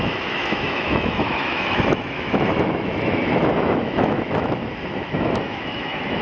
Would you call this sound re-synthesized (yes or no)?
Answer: yes